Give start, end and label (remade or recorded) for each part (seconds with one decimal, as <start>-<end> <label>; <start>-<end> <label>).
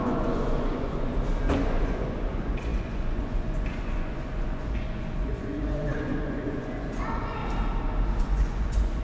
0.0-1.1 remade; 1.1-1.6 recorded; 1.6-7.4 remade; 7.4-8.2 recorded; 8.2-9.0 remade